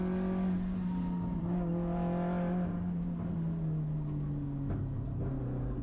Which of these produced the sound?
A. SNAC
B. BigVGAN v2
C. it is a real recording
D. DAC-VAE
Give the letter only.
C